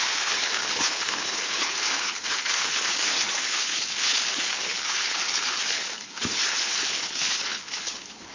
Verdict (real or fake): fake